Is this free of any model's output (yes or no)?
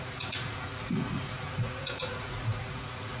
no